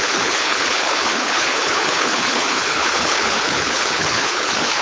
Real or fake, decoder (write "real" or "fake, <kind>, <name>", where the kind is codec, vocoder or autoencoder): fake, codec, HILCodec